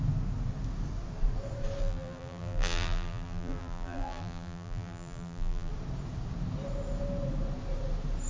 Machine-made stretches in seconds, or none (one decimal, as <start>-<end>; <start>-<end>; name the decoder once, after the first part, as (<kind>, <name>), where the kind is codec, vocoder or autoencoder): 1.8-5.7 (vocoder, BigVGAN v2)